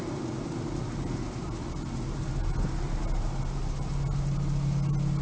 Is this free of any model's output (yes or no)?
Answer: yes